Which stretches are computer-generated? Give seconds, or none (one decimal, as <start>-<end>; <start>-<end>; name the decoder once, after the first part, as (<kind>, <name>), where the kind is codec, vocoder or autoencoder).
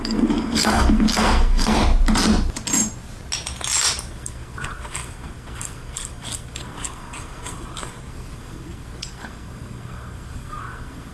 0.0-1.8 (codec, SNAC); 4.1-11.1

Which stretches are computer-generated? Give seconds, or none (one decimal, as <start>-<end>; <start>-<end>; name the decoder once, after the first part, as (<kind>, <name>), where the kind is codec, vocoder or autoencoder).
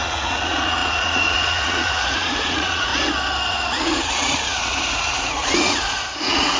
0.0-2.9 (vocoder, Vocos); 3.5-6.6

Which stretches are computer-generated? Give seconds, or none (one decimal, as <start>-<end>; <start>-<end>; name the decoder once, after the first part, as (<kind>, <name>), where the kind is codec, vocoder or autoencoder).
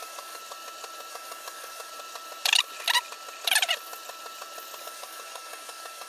0.0-0.4 (codec, DAC); 1.1-1.9; 4.8-6.1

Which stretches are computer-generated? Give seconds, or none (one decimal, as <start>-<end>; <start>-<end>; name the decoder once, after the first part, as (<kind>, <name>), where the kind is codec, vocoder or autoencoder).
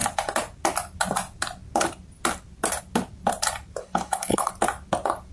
3.8-4.5 (codec, HILCodec)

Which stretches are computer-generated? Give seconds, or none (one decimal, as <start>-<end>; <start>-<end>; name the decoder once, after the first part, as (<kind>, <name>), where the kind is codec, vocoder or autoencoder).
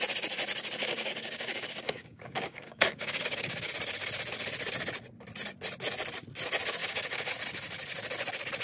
0.8-3.7 (codec, DAC); 6.8-7.3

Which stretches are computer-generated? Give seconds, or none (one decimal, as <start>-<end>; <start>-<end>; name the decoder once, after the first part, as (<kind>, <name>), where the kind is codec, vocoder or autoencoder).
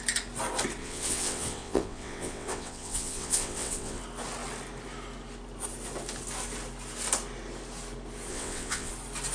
0.8-4.0 (vocoder, WaveNeXt); 8.3-8.9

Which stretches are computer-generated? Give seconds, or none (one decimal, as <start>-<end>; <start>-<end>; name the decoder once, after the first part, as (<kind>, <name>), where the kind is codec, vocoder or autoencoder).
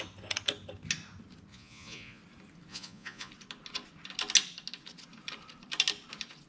1.5-2.2 (vocoder, Vocos); 2.7-3.3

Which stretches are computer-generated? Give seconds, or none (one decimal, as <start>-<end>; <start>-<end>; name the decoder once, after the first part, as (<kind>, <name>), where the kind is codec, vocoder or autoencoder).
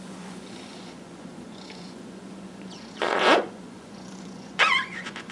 0.0-5.3 (vocoder, Vocos)